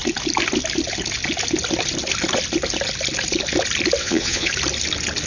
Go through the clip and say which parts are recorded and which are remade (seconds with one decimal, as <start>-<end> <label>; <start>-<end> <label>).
0.0-4.0 recorded; 4.0-4.5 remade; 4.5-5.3 recorded